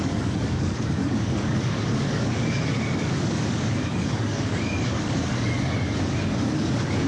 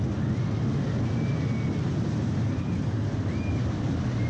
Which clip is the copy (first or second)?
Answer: first